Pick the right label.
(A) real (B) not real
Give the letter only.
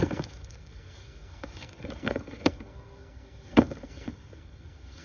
B